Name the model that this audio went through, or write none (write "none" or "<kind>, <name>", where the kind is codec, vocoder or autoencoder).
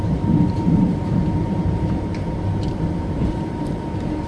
vocoder, BigVGAN v2